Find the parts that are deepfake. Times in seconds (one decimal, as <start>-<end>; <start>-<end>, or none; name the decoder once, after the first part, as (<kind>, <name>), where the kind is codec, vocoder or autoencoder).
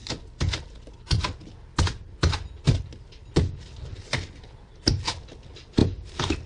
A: none